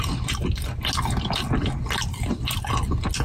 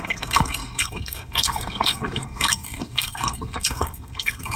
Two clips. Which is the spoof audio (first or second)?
second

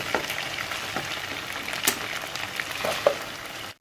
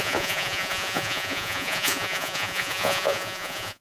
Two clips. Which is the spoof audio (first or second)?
second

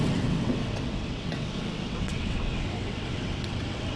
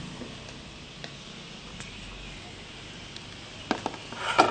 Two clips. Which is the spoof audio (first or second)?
first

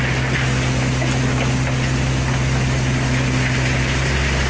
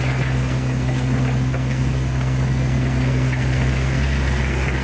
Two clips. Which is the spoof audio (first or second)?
second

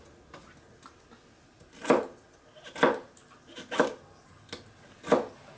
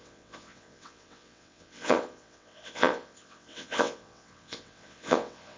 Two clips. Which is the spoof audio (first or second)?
second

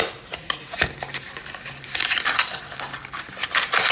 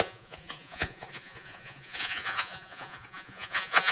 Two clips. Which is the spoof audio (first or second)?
second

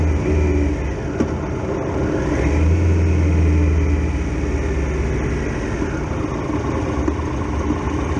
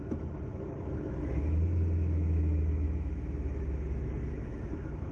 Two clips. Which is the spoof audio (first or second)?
second